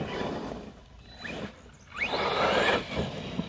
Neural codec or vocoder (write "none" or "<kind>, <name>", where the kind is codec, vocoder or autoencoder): none